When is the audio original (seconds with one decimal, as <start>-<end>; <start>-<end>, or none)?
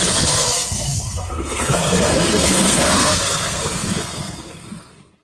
none